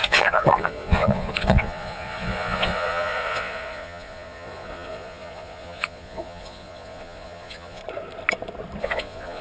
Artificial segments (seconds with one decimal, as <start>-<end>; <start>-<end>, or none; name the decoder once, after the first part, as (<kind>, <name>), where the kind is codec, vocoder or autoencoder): 0.0-7.8 (vocoder, Vocos); 8.8-9.4

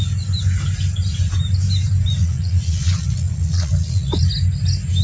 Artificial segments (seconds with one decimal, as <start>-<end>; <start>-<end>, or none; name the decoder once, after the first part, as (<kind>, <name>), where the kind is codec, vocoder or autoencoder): 2.2-4.2 (vocoder, Vocos)